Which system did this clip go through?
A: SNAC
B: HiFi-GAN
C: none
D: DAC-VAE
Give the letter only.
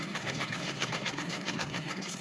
A